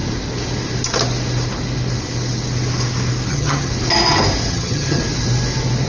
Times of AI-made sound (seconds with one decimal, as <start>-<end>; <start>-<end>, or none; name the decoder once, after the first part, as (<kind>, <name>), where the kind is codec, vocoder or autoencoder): 3.3-3.7 (vocoder, HiFi-GAN); 4.5-5.0